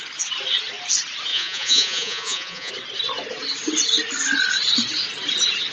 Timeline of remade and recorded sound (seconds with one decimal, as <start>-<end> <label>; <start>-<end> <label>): 0.0-1.3 recorded; 1.3-2.7 remade; 2.7-5.7 recorded

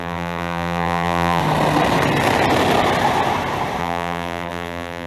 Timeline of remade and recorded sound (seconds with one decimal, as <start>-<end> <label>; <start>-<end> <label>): 0.0-1.4 remade; 1.4-3.8 recorded; 3.8-5.1 remade

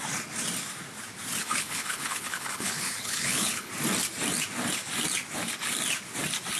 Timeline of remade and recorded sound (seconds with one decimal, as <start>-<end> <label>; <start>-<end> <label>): 0.0-1.4 recorded; 1.4-3.7 remade; 3.7-6.6 recorded

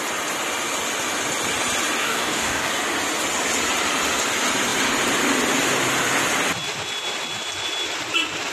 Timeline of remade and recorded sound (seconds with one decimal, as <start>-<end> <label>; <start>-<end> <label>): 0.0-2.0 recorded; 2.0-2.7 remade; 2.7-8.5 recorded

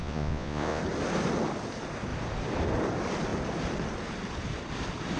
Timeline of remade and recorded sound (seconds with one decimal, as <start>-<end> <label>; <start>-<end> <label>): 0.0-0.8 remade; 0.8-5.2 recorded

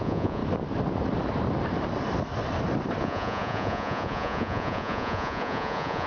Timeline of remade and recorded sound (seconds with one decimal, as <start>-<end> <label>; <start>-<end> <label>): 0.0-0.4 remade; 0.4-3.0 recorded; 3.0-6.1 remade

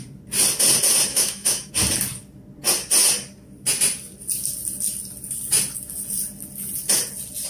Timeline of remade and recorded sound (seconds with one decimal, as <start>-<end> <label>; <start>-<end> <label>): 0.0-1.1 recorded; 1.1-1.7 remade; 1.7-7.5 recorded